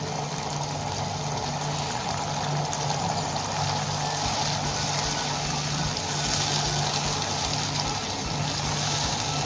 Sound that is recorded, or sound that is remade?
recorded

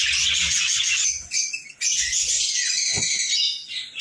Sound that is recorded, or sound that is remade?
recorded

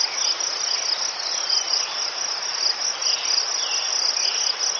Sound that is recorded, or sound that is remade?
recorded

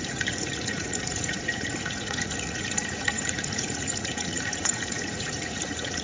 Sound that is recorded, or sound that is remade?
remade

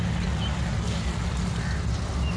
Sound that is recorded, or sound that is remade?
recorded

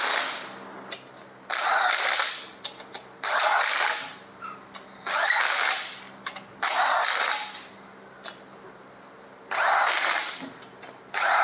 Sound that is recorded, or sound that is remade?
recorded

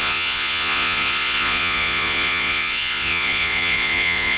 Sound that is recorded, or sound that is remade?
remade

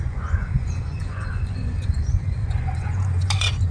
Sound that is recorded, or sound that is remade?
remade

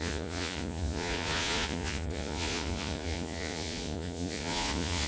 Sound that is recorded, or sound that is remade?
remade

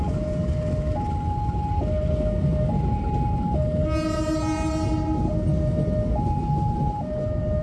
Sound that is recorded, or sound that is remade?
recorded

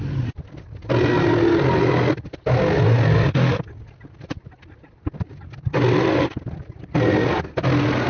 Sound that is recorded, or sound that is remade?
recorded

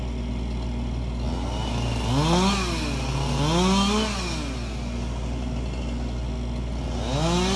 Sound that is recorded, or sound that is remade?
recorded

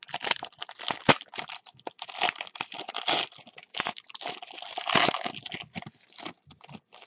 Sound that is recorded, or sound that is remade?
recorded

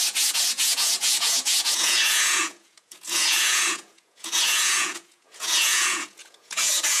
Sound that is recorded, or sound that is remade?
remade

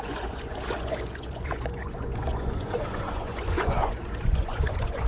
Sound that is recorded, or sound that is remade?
remade